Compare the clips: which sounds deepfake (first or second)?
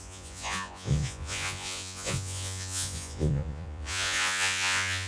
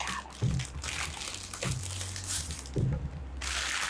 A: first